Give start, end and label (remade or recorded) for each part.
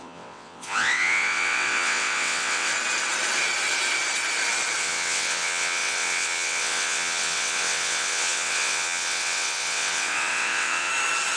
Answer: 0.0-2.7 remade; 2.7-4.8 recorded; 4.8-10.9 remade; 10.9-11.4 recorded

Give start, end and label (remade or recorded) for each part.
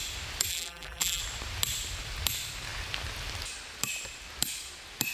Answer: 0.0-0.5 recorded; 0.5-1.2 remade; 1.2-5.1 recorded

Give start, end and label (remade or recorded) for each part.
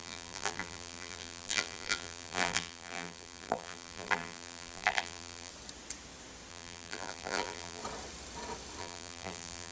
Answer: 0.0-5.5 remade; 5.5-6.5 recorded; 6.5-7.8 remade; 7.8-8.8 recorded; 8.8-9.7 remade